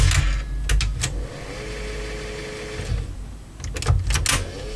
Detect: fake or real real